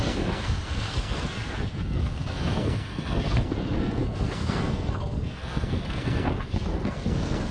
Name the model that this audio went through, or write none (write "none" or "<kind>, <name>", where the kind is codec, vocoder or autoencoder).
codec, SNAC